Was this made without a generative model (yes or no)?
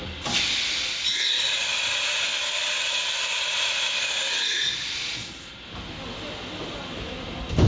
yes